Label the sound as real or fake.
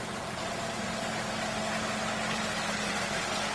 real